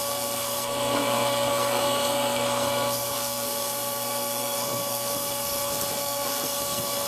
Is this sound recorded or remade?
remade